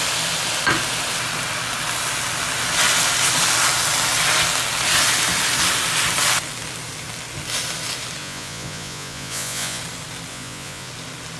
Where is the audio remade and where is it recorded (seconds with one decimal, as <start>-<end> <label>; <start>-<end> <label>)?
0.0-8.2 recorded; 8.2-9.8 remade; 9.8-10.3 recorded; 10.3-10.9 remade; 10.9-11.4 recorded